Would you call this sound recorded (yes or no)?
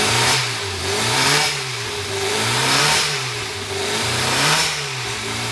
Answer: no